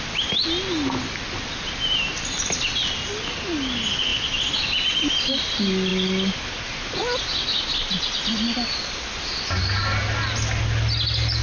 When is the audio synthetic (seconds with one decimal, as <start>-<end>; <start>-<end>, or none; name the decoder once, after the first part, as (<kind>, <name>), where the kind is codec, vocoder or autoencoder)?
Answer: none